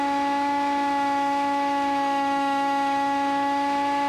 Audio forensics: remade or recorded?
remade